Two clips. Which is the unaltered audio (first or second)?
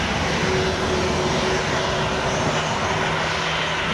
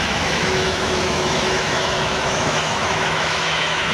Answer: first